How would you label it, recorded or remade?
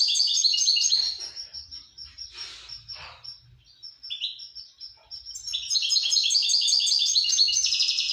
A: recorded